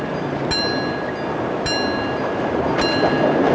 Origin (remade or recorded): recorded